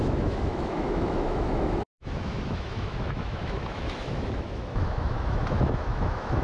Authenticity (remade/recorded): remade